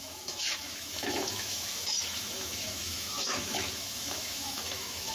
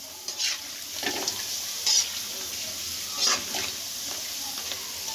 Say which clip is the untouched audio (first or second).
second